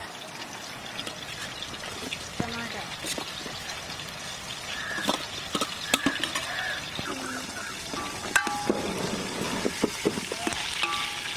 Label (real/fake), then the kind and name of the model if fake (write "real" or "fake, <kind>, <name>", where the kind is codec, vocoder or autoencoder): real